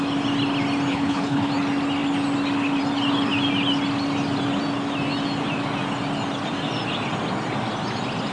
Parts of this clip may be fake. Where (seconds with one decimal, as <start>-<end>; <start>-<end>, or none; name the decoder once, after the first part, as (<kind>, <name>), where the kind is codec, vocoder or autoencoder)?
0.9-1.5 (codec, HILCodec)